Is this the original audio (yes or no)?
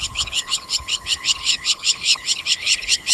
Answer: no